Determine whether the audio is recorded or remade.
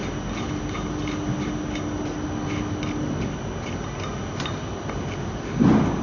recorded